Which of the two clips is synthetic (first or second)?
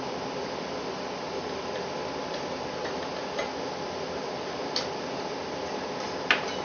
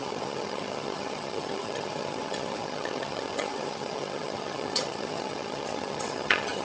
second